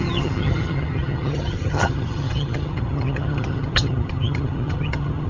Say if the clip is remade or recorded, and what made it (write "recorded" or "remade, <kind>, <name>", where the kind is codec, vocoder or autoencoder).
remade, vocoder, HiFi-GAN